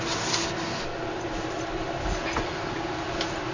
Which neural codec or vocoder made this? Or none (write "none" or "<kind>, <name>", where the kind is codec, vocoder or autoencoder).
none